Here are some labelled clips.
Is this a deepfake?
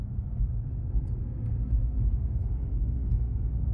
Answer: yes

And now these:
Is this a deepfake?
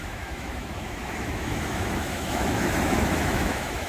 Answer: yes